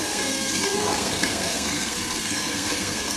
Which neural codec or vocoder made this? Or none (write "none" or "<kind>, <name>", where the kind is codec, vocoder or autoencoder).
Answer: codec, SNAC